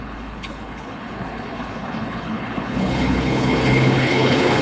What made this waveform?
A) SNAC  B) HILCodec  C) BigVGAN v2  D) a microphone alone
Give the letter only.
B